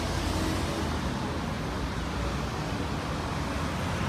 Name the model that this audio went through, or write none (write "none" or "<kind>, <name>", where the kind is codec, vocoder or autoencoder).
none